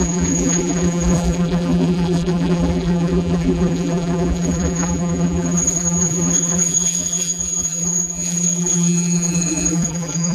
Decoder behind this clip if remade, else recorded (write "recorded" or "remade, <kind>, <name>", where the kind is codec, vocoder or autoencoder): remade, vocoder, BigVGAN v2